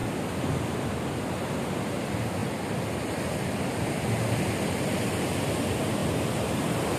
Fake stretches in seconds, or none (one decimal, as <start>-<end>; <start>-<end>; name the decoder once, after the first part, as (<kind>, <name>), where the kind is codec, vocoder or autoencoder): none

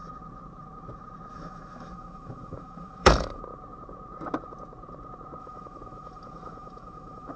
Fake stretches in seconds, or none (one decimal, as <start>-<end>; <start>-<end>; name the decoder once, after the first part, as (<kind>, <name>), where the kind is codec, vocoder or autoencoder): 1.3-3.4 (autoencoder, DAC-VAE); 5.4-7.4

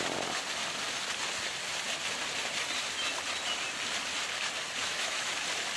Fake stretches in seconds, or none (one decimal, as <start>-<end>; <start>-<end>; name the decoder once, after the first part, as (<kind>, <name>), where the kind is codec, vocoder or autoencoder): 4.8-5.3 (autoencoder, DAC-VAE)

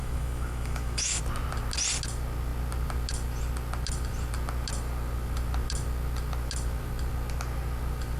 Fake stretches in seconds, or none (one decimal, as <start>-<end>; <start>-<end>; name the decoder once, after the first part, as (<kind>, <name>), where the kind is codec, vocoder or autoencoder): 0.0-1.2 (autoencoder, DAC-VAE)

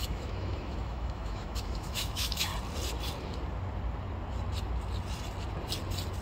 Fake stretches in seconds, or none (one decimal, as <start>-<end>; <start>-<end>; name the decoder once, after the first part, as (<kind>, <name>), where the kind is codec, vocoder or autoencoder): 0.0-2.5 (autoencoder, DAC-VAE)